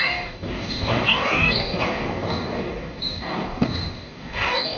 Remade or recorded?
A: remade